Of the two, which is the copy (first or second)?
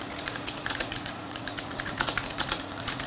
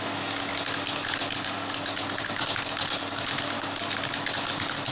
first